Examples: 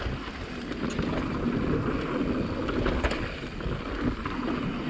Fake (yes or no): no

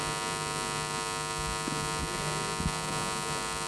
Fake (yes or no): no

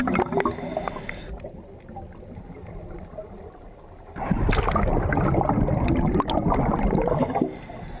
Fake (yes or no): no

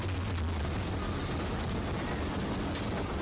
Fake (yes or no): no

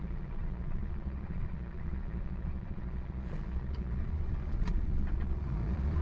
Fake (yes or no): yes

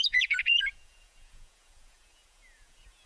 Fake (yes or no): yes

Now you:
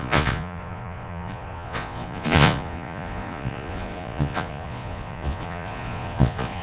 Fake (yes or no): yes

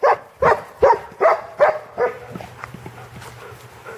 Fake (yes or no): no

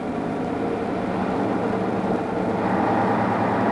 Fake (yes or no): no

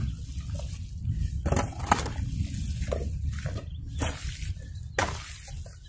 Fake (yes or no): no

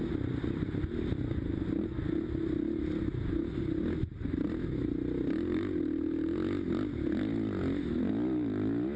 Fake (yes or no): no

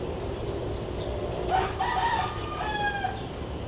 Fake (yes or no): no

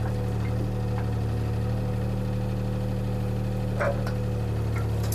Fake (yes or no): no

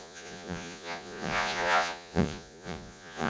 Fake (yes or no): yes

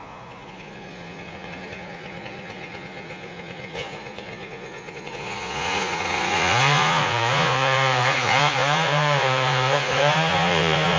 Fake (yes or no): yes